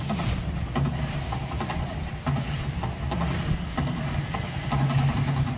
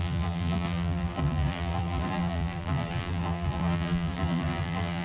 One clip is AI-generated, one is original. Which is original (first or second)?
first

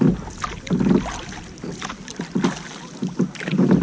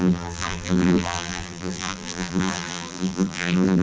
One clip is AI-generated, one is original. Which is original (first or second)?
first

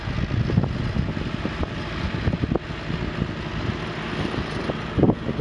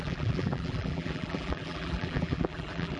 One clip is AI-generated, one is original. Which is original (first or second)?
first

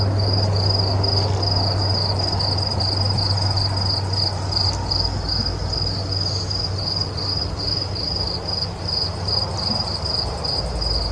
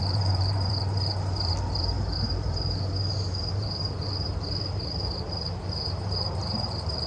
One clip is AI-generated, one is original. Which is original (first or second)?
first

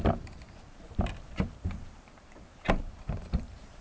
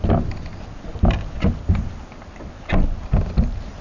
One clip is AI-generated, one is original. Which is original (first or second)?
second